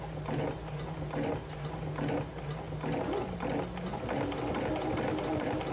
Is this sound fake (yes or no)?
no